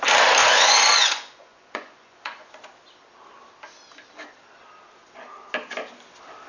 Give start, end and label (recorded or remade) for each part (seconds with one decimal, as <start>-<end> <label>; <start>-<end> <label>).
0.0-0.4 recorded; 0.4-2.5 remade; 2.5-6.5 recorded